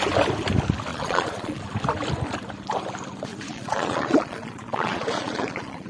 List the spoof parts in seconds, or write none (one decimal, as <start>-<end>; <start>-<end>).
0.9-1.6; 3.3-5.9